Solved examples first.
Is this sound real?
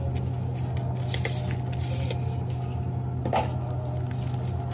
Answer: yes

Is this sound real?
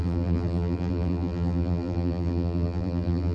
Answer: no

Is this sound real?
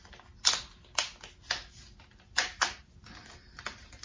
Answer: yes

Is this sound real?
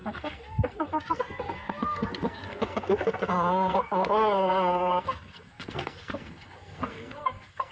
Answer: no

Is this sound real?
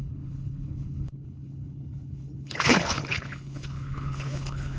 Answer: no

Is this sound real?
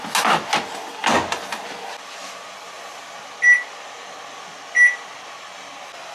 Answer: yes